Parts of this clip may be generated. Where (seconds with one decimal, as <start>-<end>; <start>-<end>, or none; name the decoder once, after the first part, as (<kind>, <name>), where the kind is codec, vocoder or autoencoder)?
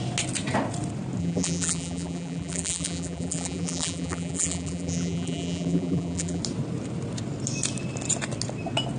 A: 1.2-6.4 (vocoder, BigVGAN v2)